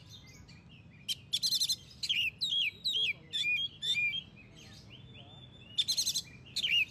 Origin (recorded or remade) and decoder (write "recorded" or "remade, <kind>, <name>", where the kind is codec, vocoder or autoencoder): recorded